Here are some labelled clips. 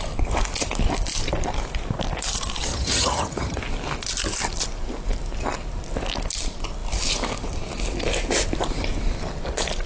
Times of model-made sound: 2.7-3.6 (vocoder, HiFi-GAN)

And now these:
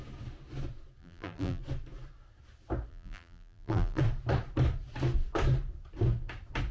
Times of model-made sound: 1.0-1.6 (vocoder, BigVGAN v2); 2.9-4.0

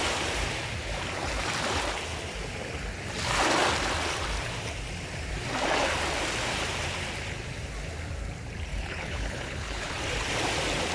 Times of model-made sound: 8.7-9.9 (codec, HILCodec)

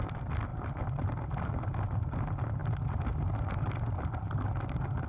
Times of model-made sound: none

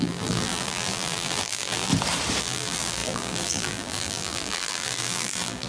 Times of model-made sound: 0.0-1.9 (vocoder, BigVGAN v2); 2.4-5.7

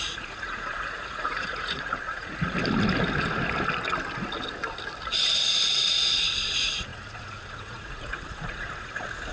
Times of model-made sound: 0.0-2.6 (vocoder, Vocos); 5.7-9.3

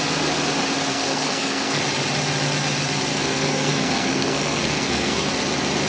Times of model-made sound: 0.9-1.8 (codec, SNAC); 3.1-5.3